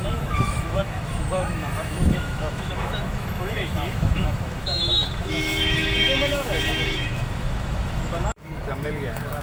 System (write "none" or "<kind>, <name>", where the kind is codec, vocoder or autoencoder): autoencoder, DAC-VAE